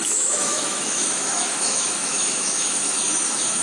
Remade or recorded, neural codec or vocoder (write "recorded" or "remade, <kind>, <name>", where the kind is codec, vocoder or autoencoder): remade, autoencoder, DAC-VAE